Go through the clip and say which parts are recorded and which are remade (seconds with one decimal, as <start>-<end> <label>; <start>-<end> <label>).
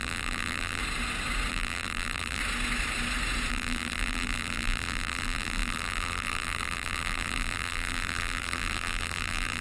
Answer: 0.0-0.8 remade; 0.8-1.5 recorded; 1.5-2.4 remade; 2.4-3.5 recorded; 3.5-9.6 remade